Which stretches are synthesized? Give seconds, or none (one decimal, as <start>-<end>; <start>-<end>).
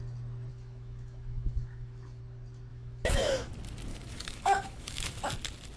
0.5-2.2; 2.7-3.5; 3.9-5.2